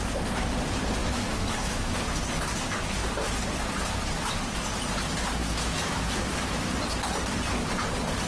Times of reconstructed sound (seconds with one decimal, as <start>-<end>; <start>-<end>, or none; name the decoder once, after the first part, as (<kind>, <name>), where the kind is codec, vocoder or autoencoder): 1.0-2.0 (autoencoder, DAC-VAE); 5.4-6.7